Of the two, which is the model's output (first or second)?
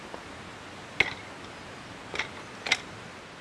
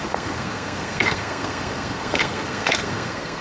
second